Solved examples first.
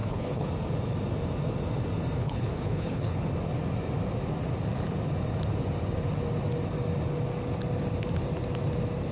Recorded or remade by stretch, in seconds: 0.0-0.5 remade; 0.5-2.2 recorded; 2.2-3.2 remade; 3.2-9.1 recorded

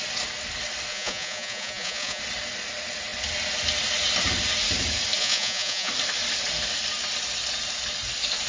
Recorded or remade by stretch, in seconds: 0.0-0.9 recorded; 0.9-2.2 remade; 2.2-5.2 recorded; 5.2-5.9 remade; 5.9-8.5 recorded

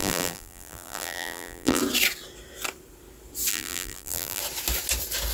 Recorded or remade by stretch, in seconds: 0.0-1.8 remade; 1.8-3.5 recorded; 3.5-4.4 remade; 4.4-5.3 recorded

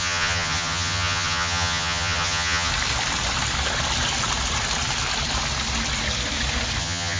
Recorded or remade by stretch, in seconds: 0.0-2.7 remade; 2.7-6.8 recorded; 6.8-7.2 remade

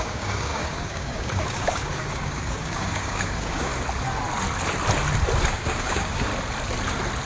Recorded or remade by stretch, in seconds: 0.0-3.7 remade; 3.7-5.5 recorded; 5.5-6.3 remade; 6.3-7.3 recorded

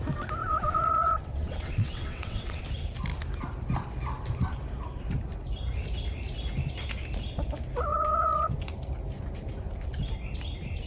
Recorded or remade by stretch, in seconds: 0.0-0.4 recorded; 0.4-2.6 remade; 2.6-7.9 recorded; 7.9-8.6 remade; 8.6-10.9 recorded